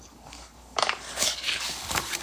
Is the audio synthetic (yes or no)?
yes